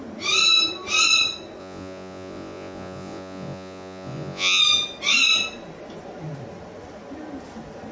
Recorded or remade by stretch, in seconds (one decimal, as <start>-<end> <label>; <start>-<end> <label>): 0.0-1.6 recorded; 1.6-4.6 remade; 4.6-7.9 recorded